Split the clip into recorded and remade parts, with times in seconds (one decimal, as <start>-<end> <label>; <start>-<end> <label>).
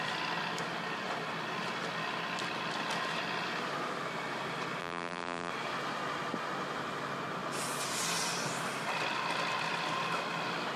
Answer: 0.0-4.8 recorded; 4.8-5.5 remade; 5.5-10.8 recorded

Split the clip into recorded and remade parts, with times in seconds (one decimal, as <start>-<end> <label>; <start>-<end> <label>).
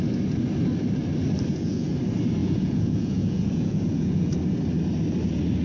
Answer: 0.0-1.5 recorded; 1.5-2.0 remade; 2.0-2.4 recorded; 2.4-4.4 remade; 4.4-5.6 recorded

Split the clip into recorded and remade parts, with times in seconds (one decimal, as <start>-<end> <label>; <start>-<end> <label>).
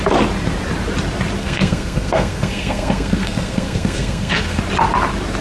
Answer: 0.0-1.4 recorded; 1.4-4.6 remade; 4.6-5.4 recorded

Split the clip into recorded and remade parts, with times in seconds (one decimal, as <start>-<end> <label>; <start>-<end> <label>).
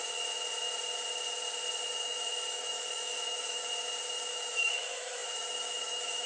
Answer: 0.0-1.9 recorded; 1.9-3.7 remade; 3.7-4.3 recorded; 4.3-6.3 remade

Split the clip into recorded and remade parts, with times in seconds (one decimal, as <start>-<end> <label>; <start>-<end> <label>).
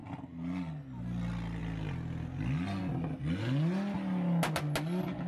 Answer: 0.0-5.3 recorded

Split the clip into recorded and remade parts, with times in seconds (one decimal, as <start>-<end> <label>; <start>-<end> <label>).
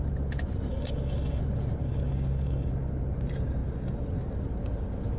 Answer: 0.0-0.7 recorded; 0.7-1.4 remade; 1.4-1.8 recorded; 1.8-2.7 remade; 2.7-5.2 recorded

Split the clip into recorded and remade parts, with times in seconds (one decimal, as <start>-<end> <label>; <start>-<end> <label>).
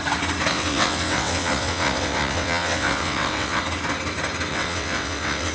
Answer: 0.0-0.5 recorded; 0.5-3.6 remade; 3.6-4.5 recorded; 4.5-5.5 remade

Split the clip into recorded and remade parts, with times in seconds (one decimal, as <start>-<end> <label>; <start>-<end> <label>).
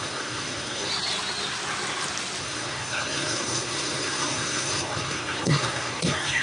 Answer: 0.0-0.9 remade; 0.9-2.4 recorded; 2.4-6.4 remade